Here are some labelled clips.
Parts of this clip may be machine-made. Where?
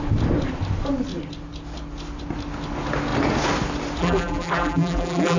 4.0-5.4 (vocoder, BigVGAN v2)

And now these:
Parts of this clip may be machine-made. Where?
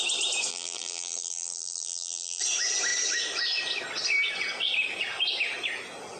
0.5-2.4 (vocoder, BigVGAN v2)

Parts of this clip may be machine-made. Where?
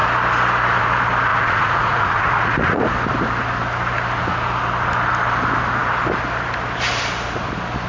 1.3-2.8 (vocoder, Vocos)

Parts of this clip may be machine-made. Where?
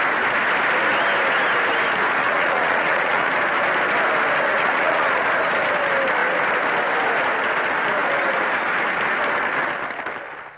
2.2-3.3 (vocoder, Vocos); 4.5-5.3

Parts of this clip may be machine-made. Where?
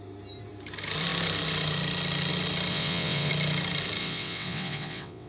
2.7-3.3 (vocoder, WaveNeXt); 4.0-5.3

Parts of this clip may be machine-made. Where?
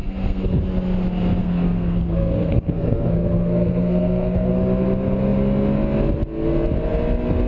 0.0-0.6 (codec, SNAC); 1.4-4.5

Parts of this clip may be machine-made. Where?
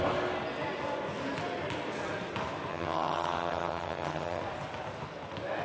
2.7-4.4 (vocoder, HiFi-GAN)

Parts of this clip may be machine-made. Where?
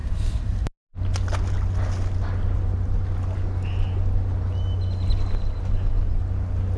none